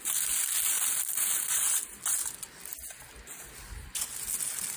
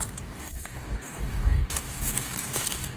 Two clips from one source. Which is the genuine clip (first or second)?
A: first